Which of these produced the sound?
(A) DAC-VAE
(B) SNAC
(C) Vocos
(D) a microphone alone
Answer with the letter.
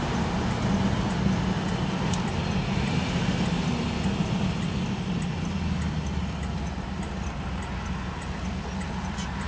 D